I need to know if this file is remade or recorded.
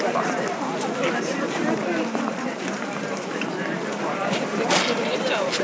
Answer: remade